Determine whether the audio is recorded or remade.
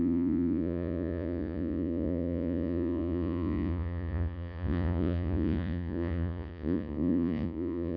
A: remade